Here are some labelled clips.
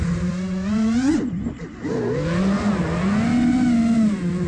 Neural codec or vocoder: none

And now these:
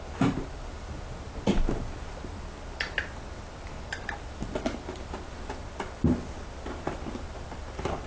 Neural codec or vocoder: none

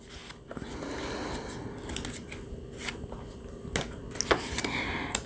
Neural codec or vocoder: none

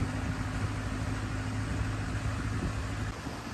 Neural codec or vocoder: none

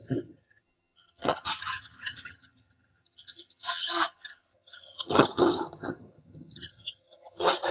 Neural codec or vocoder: vocoder, HiFi-GAN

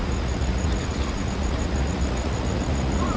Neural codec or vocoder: vocoder, Vocos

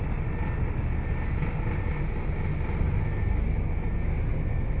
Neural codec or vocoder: none